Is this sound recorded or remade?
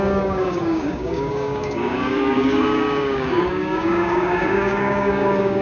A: remade